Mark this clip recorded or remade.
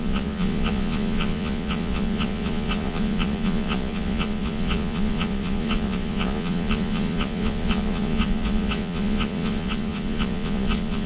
remade